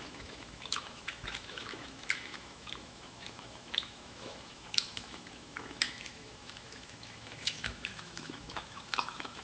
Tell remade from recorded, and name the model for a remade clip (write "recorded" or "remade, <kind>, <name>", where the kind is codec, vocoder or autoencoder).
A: remade, autoencoder, DAC-VAE